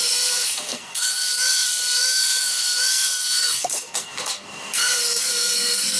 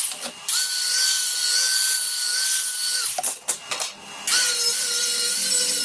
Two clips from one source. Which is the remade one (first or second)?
first